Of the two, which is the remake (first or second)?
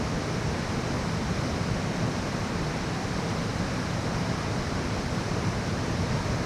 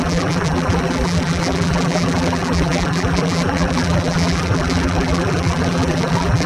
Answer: second